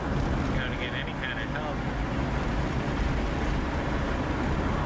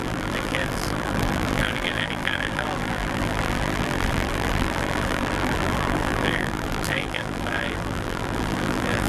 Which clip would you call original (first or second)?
first